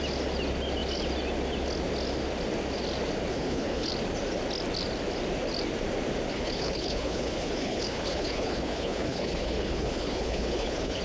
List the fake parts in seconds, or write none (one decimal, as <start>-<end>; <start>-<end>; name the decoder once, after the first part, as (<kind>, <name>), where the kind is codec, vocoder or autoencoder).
3.3-3.9 (codec, HILCodec); 6.3-11.0